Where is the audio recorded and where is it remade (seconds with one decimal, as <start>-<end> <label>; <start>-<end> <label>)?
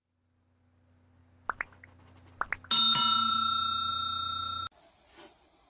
0.0-5.7 recorded